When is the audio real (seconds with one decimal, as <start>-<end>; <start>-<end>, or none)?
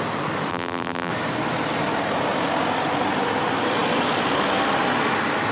0.0-0.5; 1.1-5.5